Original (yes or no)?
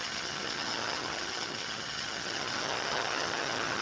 no